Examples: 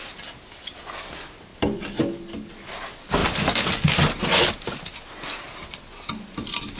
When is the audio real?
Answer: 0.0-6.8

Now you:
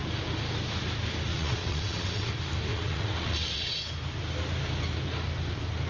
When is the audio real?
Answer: 0.0-1.3; 2.3-2.7; 3.8-5.9

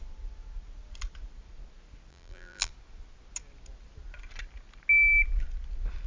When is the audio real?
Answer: 0.0-2.1; 2.7-6.1

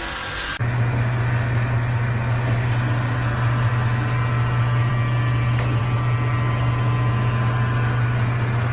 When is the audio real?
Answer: 0.0-8.7